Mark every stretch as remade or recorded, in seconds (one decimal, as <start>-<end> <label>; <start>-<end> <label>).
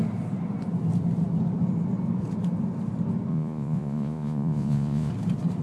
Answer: 0.0-3.3 recorded; 3.3-5.1 remade; 5.1-5.6 recorded